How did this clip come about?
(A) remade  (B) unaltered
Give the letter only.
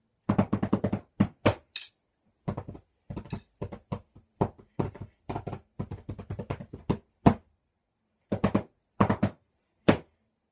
B